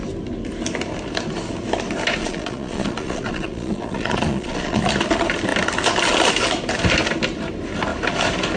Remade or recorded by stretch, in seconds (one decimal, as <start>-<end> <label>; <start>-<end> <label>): 0.0-2.2 recorded; 2.2-4.8 remade; 4.8-8.6 recorded